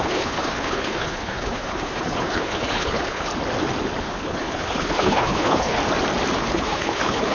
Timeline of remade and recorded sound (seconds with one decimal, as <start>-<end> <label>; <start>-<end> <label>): 0.0-3.3 remade; 3.3-4.0 recorded; 4.0-5.8 remade; 5.8-6.4 recorded; 6.4-7.3 remade